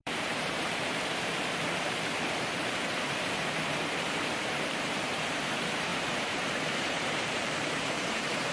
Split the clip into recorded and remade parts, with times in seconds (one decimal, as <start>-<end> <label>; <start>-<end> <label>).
0.0-8.5 remade